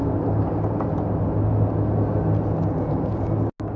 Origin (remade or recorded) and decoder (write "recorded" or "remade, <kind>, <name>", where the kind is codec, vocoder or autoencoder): recorded